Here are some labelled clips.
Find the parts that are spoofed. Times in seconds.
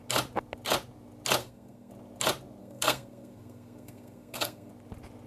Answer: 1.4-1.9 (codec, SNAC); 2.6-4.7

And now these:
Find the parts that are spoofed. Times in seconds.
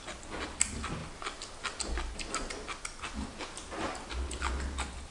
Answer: none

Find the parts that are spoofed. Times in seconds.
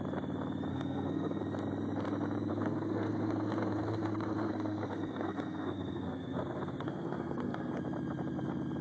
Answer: 0.7-1.4 (codec, SNAC); 2.5-7.7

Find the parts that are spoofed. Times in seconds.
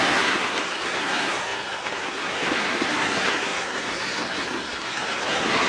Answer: 0.0-5.7 (codec, SNAC)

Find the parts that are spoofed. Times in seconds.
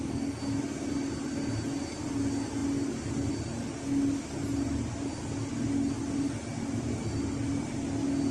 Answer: none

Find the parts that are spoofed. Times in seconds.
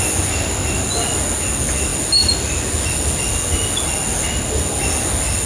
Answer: none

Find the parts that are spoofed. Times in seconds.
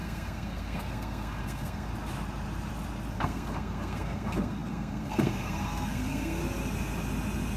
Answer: 0.0-1.9 (codec, SNAC); 3.1-6.4